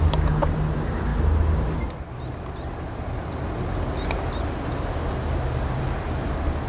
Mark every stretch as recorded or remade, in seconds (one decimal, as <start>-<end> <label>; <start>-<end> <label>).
0.0-6.7 recorded